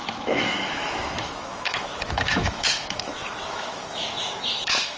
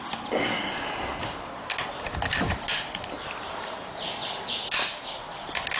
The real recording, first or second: second